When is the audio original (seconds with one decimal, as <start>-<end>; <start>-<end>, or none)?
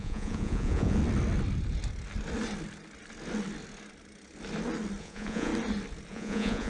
1.0-5.0; 5.5-6.1